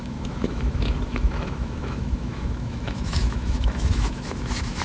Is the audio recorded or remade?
remade